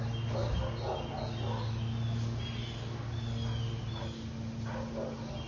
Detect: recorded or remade recorded